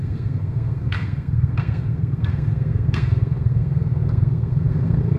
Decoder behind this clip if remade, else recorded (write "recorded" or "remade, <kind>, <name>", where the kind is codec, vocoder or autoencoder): remade, codec, SNAC